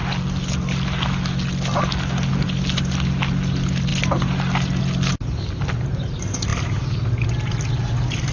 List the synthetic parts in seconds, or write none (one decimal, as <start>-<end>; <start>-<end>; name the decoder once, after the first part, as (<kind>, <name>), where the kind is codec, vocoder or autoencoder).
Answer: none